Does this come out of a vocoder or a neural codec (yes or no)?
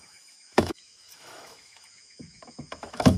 yes